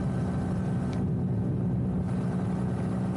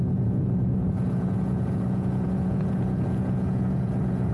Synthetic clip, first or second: second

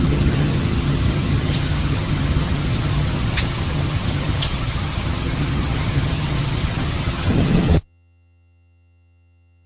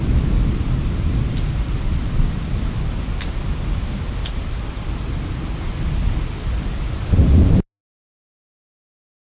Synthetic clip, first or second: first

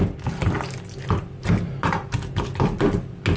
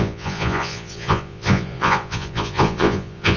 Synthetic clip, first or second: second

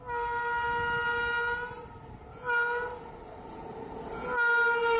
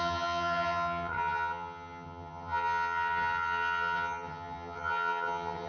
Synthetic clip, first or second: second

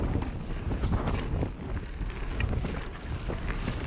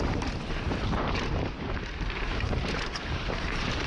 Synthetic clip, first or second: second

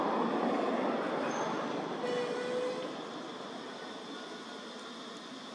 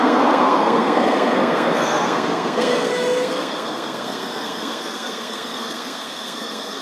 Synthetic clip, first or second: second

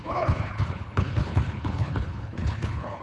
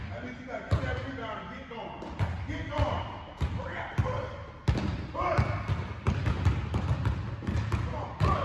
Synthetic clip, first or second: first